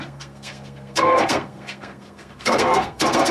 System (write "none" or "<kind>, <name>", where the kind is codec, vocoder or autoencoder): codec, SNAC